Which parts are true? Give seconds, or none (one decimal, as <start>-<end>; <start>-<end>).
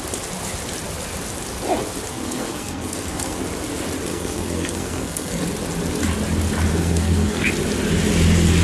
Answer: 0.0-2.1; 3.4-4.1; 5.4-6.7; 7.5-8.6